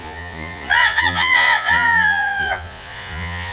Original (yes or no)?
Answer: no